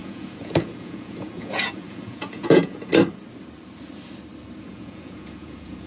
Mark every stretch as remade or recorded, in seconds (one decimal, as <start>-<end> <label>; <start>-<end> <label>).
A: 0.0-2.9 remade; 2.9-4.6 recorded; 4.6-5.9 remade